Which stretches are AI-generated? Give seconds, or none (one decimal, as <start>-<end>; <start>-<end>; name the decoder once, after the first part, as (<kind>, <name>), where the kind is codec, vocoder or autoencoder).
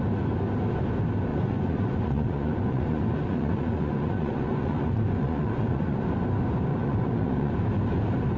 1.3-6.0 (vocoder, Vocos); 6.7-7.5